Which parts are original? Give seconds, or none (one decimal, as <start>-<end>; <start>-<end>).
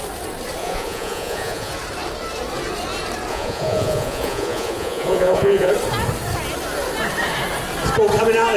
0.0-0.6; 1.7-3.3; 5.7-8.6